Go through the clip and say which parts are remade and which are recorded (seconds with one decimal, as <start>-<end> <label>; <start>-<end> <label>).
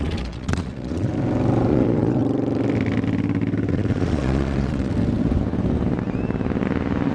0.0-1.1 remade; 1.1-1.7 recorded; 1.7-2.2 remade; 2.2-3.7 recorded; 3.7-4.9 remade; 4.9-7.1 recorded